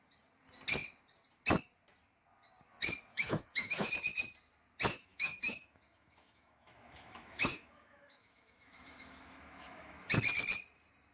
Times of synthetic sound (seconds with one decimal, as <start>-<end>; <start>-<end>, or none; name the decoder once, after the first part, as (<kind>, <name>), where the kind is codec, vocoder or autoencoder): 3.1-3.9 (autoencoder, DAC-VAE); 4.9-10.1